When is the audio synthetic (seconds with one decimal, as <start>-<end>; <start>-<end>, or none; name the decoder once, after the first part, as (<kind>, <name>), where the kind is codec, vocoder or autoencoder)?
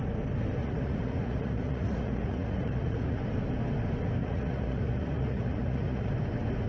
0.6-3.2 (vocoder, Vocos); 4.2-6.1